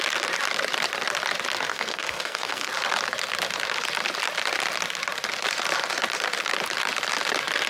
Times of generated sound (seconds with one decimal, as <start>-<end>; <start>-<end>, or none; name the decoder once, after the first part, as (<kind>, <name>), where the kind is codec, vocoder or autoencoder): 1.7-2.7 (codec, SNAC)